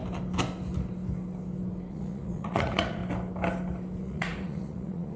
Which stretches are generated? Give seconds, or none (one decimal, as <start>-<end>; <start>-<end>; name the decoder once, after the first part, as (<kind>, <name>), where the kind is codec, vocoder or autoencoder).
1.9-3.0 (vocoder, Vocos); 4.0-5.2